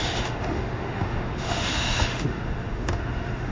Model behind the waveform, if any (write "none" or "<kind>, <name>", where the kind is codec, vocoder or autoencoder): autoencoder, DAC-VAE